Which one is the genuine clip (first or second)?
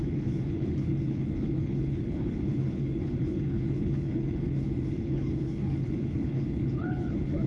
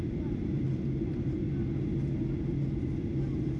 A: second